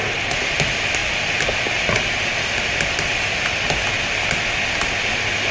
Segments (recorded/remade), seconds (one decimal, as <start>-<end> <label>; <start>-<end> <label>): 0.0-5.5 recorded